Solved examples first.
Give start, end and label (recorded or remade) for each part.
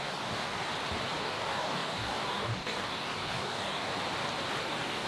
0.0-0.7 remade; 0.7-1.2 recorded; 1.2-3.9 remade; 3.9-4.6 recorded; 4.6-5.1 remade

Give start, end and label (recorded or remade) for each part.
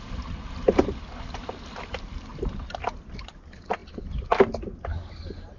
0.0-5.6 recorded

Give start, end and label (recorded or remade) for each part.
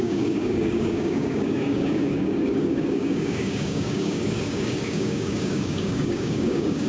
0.0-6.9 remade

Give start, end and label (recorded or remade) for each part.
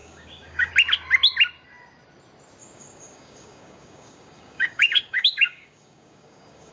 0.0-0.7 remade; 0.7-2.6 recorded; 2.6-6.7 remade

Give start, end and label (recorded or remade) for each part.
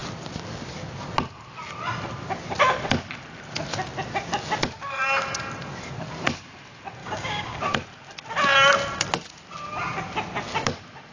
0.0-7.0 recorded; 7.0-7.6 remade; 7.6-11.1 recorded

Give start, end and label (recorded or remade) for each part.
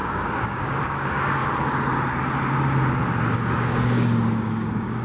0.0-1.4 remade; 1.4-3.3 recorded; 3.3-5.0 remade